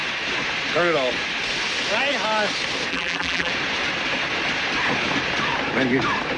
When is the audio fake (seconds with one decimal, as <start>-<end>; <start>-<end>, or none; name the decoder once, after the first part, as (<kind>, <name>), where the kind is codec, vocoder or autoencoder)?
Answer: 2.9-3.5 (vocoder, BigVGAN v2)